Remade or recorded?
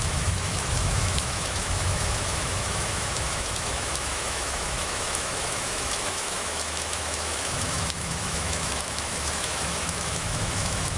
remade